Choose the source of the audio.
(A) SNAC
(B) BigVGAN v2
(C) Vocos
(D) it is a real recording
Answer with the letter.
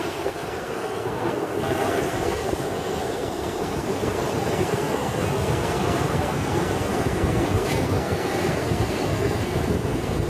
A